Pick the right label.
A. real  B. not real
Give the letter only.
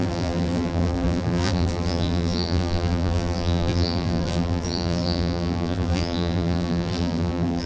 B